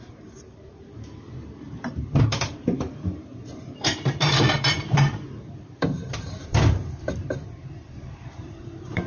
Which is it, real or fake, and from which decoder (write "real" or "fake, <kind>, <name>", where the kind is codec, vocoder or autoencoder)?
fake, vocoder, BigVGAN v2